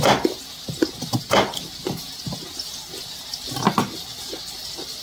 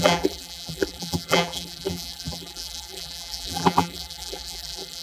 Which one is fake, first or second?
second